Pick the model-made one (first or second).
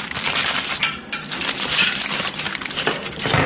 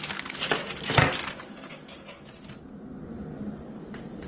first